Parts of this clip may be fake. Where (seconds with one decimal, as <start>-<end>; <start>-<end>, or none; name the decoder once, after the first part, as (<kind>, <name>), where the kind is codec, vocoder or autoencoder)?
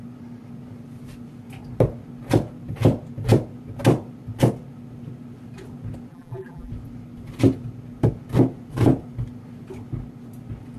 6.1-6.7 (vocoder, BigVGAN v2)